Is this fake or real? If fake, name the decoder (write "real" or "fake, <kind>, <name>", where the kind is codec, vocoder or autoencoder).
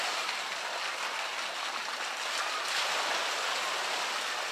real